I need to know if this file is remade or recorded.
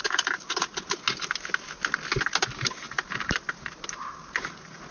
recorded